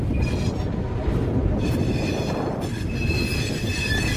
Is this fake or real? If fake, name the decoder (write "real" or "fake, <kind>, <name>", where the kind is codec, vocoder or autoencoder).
fake, vocoder, BigVGAN v2